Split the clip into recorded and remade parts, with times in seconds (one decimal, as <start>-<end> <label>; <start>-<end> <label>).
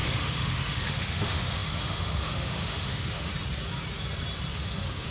0.0-3.3 remade; 3.3-4.5 recorded; 4.5-5.1 remade